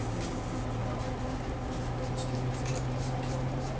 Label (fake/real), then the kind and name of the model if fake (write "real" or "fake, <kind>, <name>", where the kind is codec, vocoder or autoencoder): real